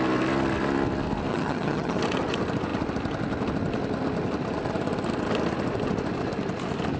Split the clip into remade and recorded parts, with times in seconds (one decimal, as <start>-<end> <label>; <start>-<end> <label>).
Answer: 0.0-1.3 recorded; 1.3-2.0 remade; 2.0-7.0 recorded